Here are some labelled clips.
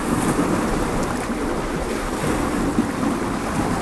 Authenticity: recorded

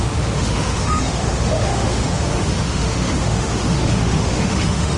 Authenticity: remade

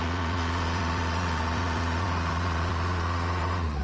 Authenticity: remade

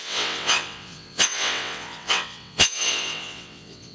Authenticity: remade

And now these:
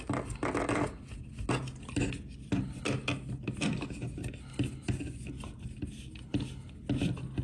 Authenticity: recorded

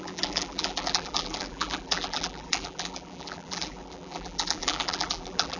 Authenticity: remade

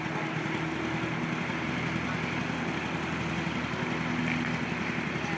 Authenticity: recorded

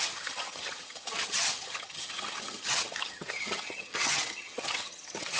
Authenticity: remade